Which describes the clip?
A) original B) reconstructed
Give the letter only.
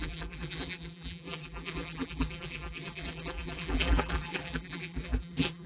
B